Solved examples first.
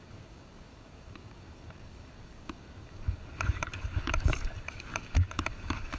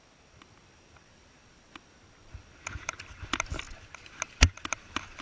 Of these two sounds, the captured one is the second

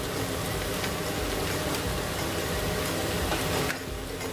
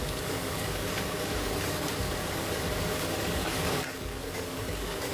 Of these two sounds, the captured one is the first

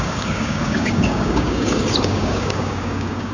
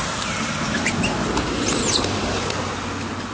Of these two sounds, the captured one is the second